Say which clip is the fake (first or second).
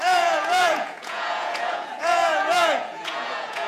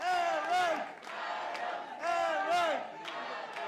first